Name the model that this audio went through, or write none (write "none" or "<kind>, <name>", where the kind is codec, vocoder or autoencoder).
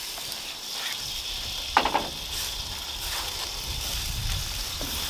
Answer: vocoder, BigVGAN v2